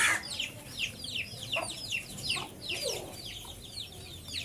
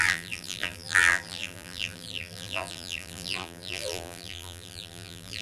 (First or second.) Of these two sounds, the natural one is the first